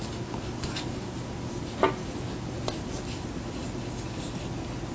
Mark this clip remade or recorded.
recorded